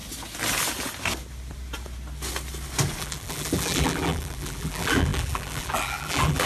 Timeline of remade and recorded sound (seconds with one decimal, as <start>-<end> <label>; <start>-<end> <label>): 0.0-3.0 recorded; 3.0-6.5 remade